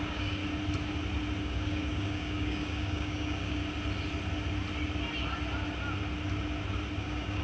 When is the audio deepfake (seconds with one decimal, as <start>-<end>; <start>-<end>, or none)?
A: 0.0-0.4; 1.4-3.6; 7.0-7.4